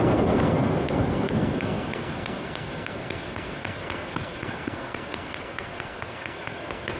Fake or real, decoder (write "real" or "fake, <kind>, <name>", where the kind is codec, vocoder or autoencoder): fake, codec, SNAC